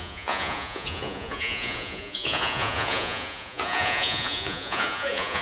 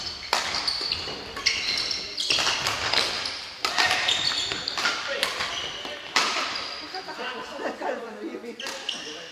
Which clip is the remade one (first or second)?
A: first